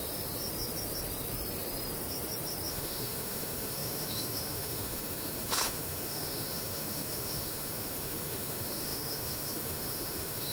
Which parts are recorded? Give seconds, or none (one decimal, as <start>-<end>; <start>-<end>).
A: 0.0-2.7